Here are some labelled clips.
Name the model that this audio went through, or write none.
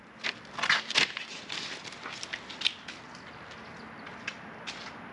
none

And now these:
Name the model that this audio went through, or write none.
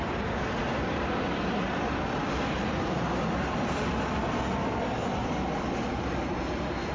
none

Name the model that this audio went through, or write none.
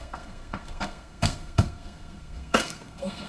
codec, SNAC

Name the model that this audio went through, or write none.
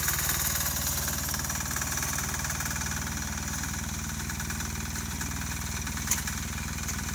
none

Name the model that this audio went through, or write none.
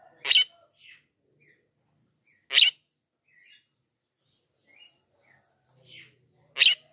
none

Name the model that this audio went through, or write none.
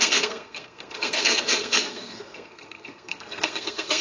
codec, SNAC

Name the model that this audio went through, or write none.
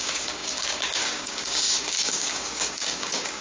codec, DAC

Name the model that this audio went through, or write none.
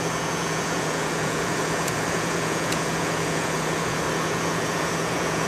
vocoder, Vocos